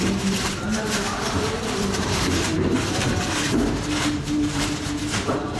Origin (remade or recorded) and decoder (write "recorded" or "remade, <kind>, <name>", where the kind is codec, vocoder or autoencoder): remade, vocoder, BigVGAN v2